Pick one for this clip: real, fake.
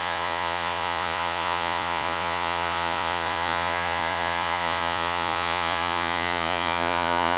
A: fake